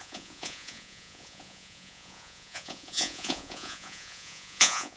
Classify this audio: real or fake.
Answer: fake